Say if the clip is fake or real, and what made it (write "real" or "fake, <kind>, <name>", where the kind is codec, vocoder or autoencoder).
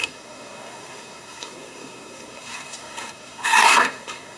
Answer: fake, codec, SNAC